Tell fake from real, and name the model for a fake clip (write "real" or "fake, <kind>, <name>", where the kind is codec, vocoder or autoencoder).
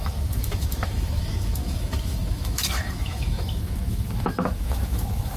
fake, autoencoder, DAC-VAE